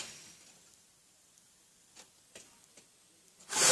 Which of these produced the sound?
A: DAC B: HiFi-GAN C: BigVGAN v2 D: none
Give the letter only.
D